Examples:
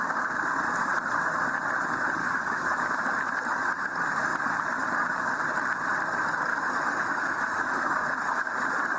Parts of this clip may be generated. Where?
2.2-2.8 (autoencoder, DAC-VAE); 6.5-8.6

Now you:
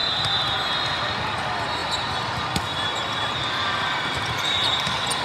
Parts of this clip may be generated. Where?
none